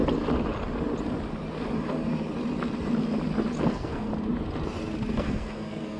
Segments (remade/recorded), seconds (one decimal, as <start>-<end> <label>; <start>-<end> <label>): 0.0-3.6 recorded; 3.6-4.1 remade; 4.1-5.1 recorded; 5.1-6.0 remade